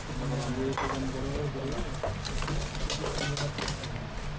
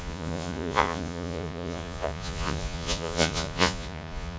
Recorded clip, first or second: first